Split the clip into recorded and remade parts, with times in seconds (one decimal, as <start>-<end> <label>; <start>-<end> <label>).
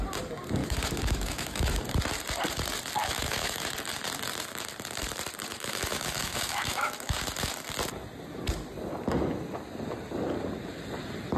0.0-0.6 recorded; 0.6-1.8 remade; 1.8-3.0 recorded; 3.0-3.7 remade; 3.7-5.5 recorded; 5.5-7.2 remade; 7.2-11.4 recorded